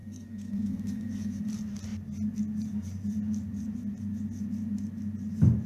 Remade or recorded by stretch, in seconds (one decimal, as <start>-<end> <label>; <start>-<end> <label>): 0.0-1.4 remade; 1.4-5.7 recorded